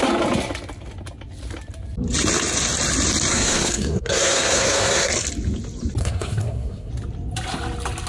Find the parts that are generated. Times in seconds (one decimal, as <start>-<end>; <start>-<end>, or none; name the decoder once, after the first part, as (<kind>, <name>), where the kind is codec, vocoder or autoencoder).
3.3-5.1 (codec, SNAC); 6.0-6.9